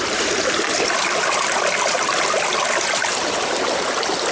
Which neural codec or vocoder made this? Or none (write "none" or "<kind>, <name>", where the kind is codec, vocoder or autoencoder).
none